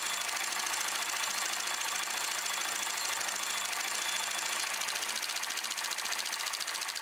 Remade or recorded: recorded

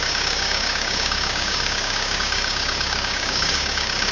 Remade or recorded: remade